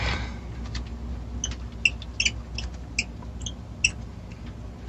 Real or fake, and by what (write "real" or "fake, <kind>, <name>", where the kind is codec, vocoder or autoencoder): real